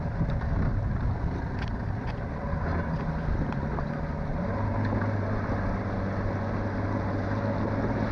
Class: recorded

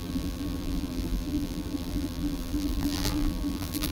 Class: remade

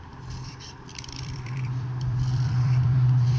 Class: remade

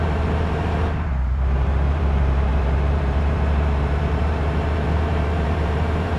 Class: remade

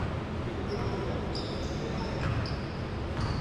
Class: recorded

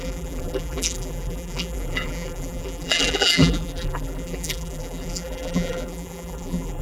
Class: remade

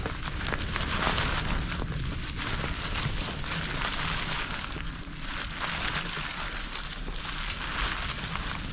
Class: recorded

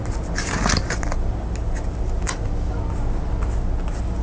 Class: recorded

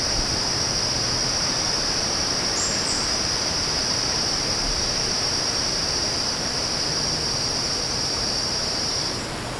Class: remade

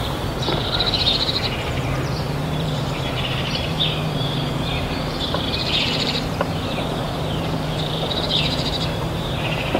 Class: remade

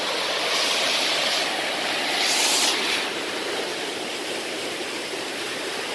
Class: remade